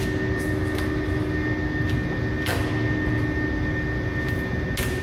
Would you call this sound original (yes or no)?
yes